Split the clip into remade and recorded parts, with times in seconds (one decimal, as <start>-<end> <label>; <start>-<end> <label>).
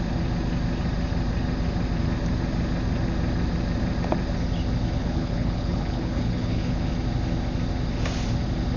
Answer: 0.0-5.0 recorded; 5.0-6.9 remade; 6.9-8.8 recorded